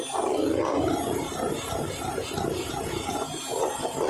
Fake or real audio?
real